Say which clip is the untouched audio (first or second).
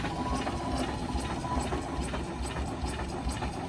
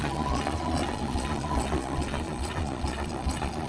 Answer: first